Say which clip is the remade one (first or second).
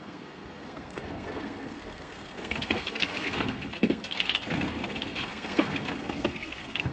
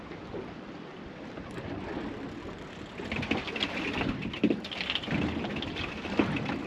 first